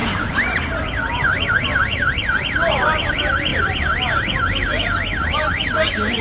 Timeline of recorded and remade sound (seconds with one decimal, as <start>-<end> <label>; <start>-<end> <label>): 0.0-1.5 remade; 1.5-6.2 recorded